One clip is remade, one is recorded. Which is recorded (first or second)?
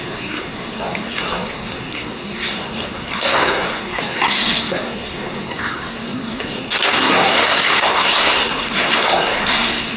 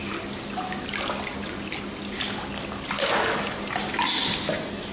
second